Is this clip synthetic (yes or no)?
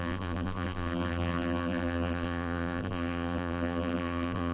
yes